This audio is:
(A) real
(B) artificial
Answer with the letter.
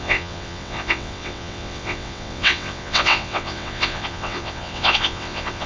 B